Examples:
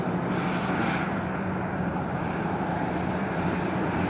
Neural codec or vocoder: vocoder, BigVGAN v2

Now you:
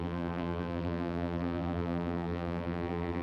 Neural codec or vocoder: vocoder, BigVGAN v2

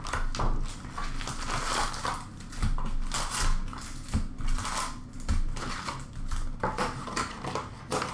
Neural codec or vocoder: none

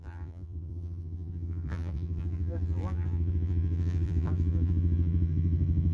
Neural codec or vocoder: vocoder, BigVGAN v2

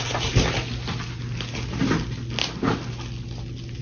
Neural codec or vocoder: none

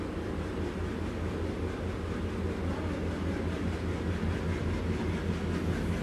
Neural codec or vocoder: none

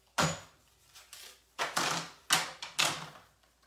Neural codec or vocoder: none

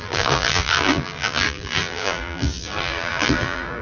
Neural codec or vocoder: vocoder, BigVGAN v2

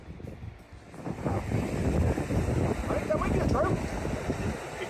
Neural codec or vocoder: none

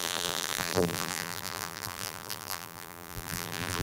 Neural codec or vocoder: vocoder, BigVGAN v2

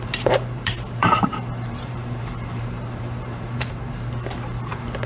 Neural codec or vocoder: vocoder, BigVGAN v2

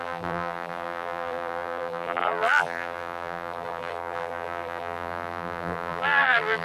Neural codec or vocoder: vocoder, BigVGAN v2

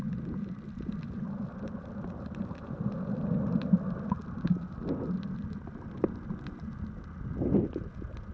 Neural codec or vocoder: none